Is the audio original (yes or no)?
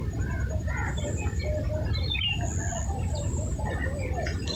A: yes